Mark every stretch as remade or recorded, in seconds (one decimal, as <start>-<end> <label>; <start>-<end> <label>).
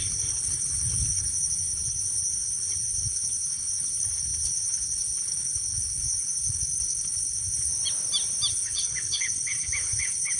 0.0-7.7 remade; 7.7-8.5 recorded; 8.5-10.4 remade